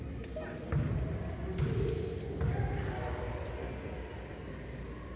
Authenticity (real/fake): real